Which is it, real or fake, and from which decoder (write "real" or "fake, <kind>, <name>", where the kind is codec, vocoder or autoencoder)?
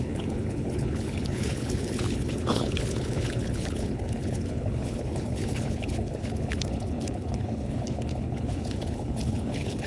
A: fake, codec, HILCodec